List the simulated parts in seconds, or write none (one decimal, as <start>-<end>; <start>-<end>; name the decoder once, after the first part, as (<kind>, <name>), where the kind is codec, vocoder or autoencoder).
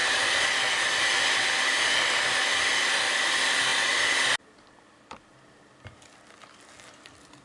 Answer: none